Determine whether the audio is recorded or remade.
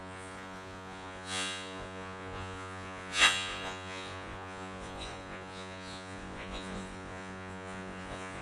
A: remade